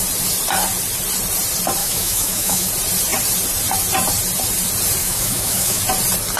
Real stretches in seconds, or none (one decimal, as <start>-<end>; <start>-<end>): 0.0-1.8; 2.7-5.0; 5.8-6.4